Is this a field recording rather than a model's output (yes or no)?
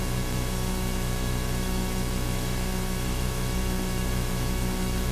no